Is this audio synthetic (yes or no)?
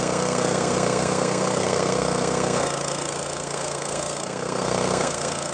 yes